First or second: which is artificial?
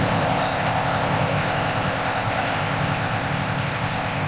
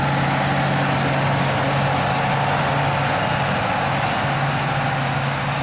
first